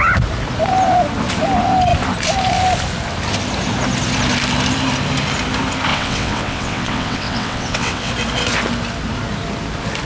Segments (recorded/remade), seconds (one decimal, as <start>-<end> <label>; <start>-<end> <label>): 0.0-5.9 recorded; 5.9-8.1 remade; 8.1-10.0 recorded